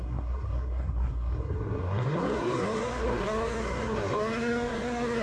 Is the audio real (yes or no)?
no